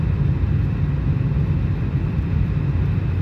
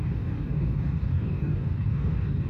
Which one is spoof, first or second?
second